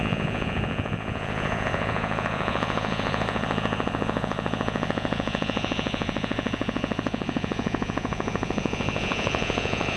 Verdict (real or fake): fake